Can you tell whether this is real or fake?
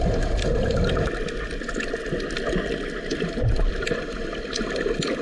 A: real